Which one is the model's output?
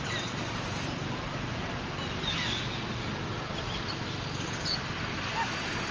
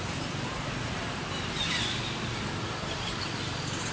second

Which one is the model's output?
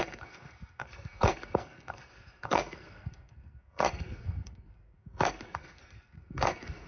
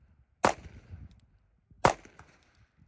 first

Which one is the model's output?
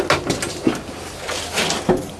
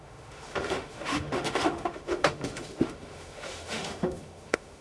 second